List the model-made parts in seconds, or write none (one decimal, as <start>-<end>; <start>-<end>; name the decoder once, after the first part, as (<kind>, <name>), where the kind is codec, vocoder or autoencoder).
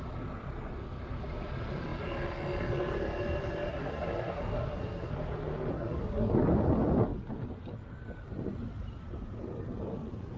3.7-5.1 (codec, SNAC); 5.7-6.3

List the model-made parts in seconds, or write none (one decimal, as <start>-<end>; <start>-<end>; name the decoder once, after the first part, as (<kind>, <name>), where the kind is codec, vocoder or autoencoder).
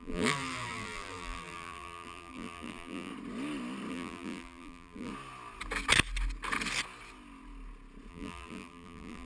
0.0-3.1 (vocoder, BigVGAN v2); 3.9-5.1; 8.1-9.3